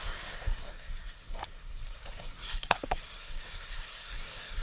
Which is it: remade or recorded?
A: remade